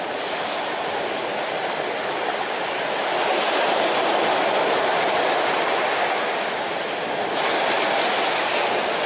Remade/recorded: recorded